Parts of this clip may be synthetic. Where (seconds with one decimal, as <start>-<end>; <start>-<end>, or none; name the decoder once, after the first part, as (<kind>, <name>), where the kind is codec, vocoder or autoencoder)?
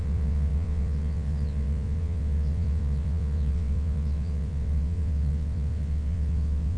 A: 0.0-6.8 (vocoder, WaveNeXt)